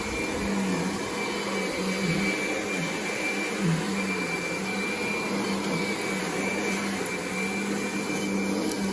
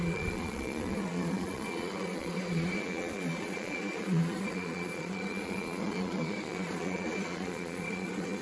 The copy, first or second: second